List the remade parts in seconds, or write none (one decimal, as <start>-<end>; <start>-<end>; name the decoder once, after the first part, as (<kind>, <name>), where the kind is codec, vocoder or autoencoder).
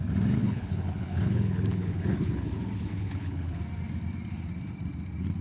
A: 0.4-3.6 (codec, HILCodec)